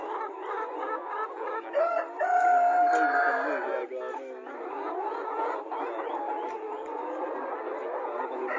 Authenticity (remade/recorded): recorded